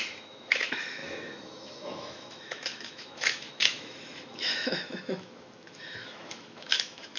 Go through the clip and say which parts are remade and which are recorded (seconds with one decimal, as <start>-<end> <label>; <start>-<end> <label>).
0.0-7.2 remade